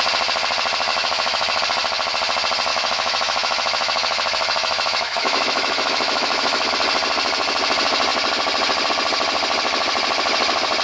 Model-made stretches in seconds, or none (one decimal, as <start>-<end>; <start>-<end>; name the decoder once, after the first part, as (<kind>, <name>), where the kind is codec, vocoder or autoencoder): 0.9-1.6 (autoencoder, DAC-VAE); 2.7-6.7